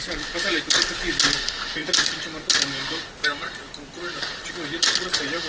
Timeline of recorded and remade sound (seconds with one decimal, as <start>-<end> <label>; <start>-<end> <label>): 0.0-5.5 recorded